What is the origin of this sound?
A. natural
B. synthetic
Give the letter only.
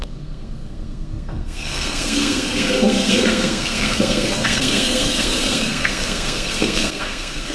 B